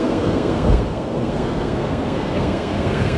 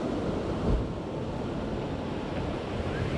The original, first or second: second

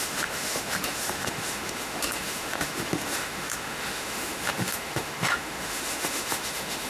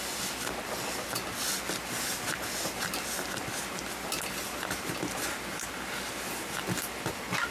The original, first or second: second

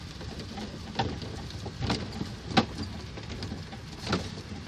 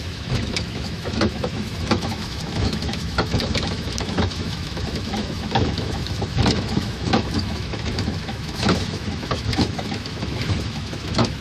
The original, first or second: first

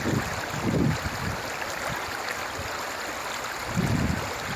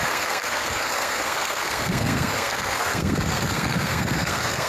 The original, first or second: first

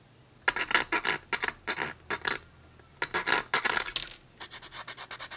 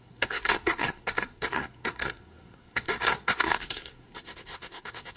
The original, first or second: first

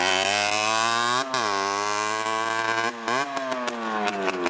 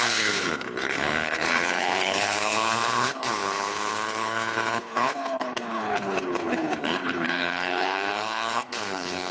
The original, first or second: first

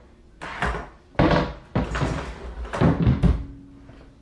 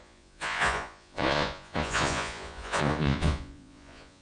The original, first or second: first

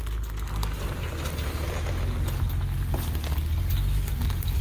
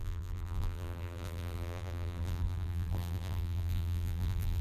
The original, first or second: first